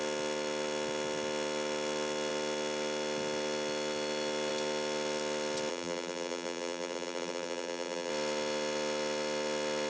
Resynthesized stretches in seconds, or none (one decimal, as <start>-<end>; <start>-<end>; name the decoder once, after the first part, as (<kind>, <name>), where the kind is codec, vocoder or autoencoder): 5.7-8.1 (vocoder, BigVGAN v2)